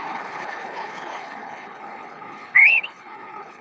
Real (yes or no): no